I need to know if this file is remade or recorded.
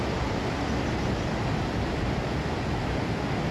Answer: recorded